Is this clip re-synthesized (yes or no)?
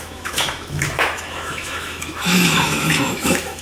yes